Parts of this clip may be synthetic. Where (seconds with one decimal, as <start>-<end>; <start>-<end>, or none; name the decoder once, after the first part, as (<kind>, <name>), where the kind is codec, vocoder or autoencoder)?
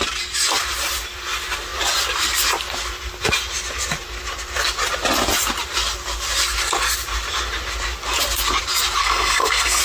9.0-9.8 (codec, SNAC)